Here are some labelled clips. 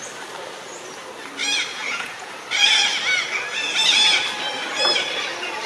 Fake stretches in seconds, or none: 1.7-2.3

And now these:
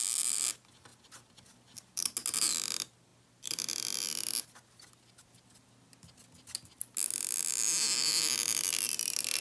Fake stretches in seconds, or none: none

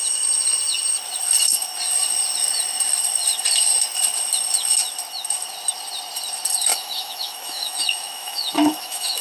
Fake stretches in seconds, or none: 6.7-9.2

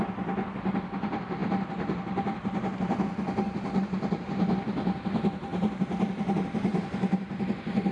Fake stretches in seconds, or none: 6.7-7.4

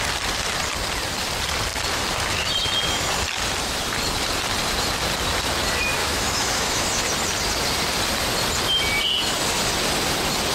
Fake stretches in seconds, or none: 6.0-7.0

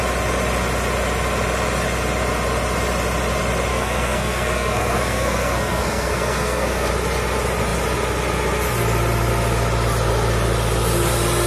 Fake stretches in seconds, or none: 3.7-6.9